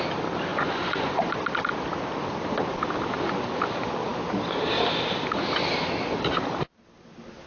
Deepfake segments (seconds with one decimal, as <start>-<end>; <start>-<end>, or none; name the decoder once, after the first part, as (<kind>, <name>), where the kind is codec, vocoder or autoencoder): 0.5-1.4 (vocoder, Vocos)